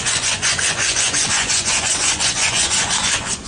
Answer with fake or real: fake